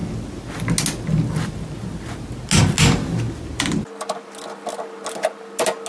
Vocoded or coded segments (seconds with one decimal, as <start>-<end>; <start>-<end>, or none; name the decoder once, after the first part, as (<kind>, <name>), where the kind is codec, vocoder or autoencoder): none